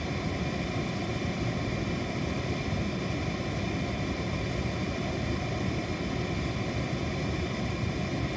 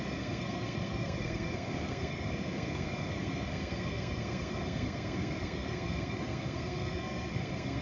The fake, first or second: second